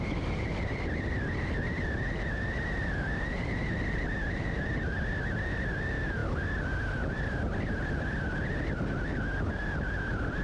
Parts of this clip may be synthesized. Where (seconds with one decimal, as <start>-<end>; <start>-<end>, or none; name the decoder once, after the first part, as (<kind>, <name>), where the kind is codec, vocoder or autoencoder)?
none